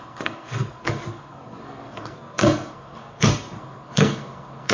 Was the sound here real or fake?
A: fake